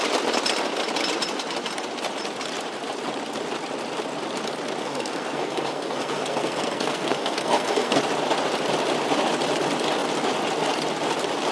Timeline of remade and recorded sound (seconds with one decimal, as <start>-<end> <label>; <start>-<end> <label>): 0.0-4.8 recorded; 4.8-8.0 remade; 8.0-11.5 recorded